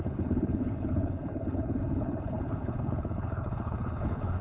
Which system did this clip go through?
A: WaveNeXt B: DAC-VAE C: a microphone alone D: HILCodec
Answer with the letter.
D